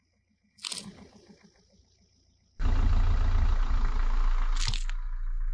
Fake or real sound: real